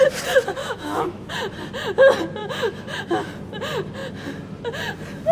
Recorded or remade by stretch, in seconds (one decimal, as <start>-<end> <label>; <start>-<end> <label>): 0.0-0.6 recorded; 0.6-1.3 remade; 1.3-2.4 recorded; 2.4-3.3 remade; 3.3-5.3 recorded